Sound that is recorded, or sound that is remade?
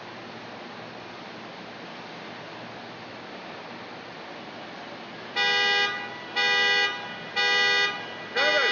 recorded